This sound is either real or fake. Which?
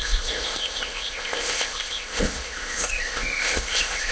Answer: fake